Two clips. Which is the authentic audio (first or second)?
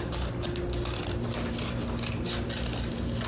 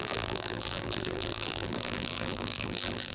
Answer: first